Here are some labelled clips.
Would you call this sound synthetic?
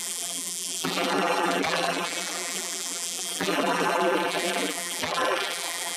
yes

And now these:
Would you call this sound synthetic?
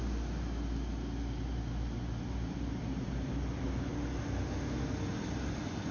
no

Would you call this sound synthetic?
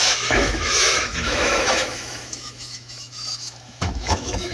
yes